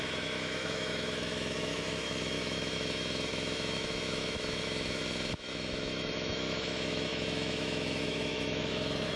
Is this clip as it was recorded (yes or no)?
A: no